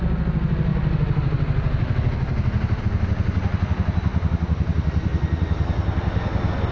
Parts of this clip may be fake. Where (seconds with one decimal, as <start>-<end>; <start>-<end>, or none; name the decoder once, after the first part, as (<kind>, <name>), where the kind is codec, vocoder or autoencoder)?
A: 0.7-2.8 (vocoder, BigVGAN v2); 4.1-6.7